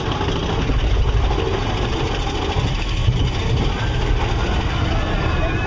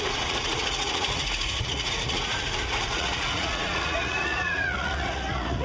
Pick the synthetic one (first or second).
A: second